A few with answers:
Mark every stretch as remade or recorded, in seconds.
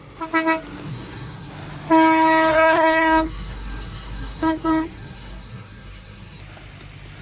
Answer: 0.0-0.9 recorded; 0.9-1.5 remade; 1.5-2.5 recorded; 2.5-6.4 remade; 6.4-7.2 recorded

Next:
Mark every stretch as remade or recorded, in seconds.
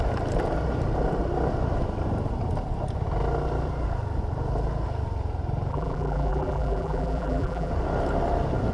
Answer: 0.0-5.7 recorded; 5.7-7.7 remade; 7.7-8.7 recorded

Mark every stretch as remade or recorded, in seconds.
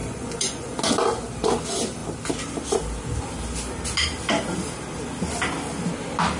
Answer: 0.0-0.8 remade; 0.8-6.4 recorded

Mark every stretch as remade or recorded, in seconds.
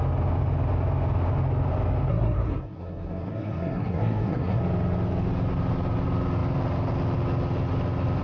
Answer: 0.0-2.1 recorded; 2.1-4.6 remade; 4.6-8.2 recorded